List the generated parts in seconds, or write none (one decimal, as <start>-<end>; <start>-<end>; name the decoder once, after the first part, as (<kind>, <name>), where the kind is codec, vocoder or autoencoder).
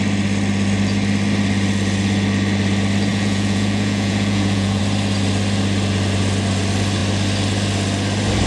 3.1-4.8 (vocoder, Vocos)